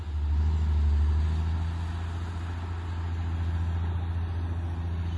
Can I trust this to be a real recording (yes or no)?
yes